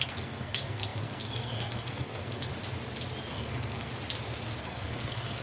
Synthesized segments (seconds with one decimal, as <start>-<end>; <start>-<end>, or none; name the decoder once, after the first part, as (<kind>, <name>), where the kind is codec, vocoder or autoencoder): 0.0-2.5 (codec, SNAC); 3.3-3.9; 4.6-5.4

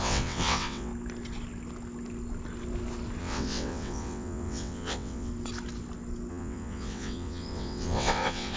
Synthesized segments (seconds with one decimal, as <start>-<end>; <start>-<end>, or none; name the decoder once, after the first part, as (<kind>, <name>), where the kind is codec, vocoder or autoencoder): 0.0-0.9 (vocoder, WaveNeXt); 3.2-5.3; 6.3-8.6

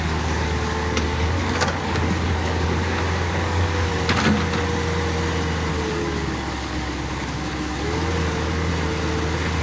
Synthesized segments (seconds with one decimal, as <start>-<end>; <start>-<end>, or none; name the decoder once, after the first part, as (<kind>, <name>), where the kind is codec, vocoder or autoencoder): 0.0-3.9 (codec, DAC); 5.7-8.7

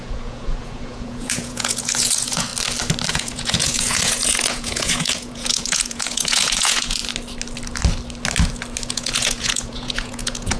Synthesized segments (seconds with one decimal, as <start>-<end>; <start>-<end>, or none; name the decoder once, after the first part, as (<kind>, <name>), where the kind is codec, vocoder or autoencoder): 0.0-2.5 (vocoder, Vocos); 3.1-7.0; 8.9-10.6

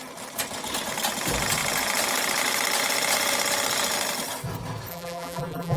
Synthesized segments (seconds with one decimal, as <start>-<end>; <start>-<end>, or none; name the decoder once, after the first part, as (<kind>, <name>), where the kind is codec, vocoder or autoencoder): 4.9-5.8 (vocoder, BigVGAN v2)

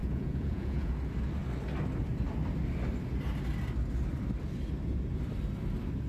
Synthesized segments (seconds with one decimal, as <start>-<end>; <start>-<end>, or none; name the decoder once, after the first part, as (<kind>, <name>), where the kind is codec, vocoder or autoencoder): 0.0-0.9 (vocoder, Vocos)

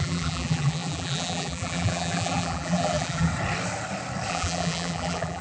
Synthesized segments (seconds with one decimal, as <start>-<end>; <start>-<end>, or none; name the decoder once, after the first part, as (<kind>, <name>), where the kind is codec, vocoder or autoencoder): 0.0-3.3 (vocoder, BigVGAN v2); 4.3-5.4

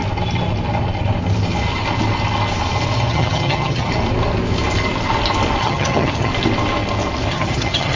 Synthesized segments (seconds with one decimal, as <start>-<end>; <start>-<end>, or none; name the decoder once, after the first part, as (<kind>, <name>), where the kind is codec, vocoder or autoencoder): 3.1-3.9 (vocoder, HiFi-GAN); 5.6-6.3; 7.3-8.0